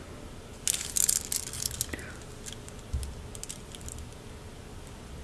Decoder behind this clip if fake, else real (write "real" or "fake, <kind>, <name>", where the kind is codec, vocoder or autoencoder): real